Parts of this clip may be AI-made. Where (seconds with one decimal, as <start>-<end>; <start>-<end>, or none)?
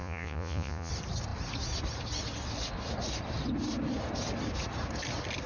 0.0-0.9